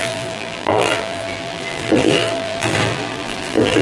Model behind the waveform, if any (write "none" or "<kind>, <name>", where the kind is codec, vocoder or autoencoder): vocoder, BigVGAN v2